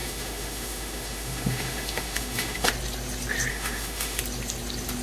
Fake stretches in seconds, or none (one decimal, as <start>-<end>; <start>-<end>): 0.0-2.7; 3.5-4.2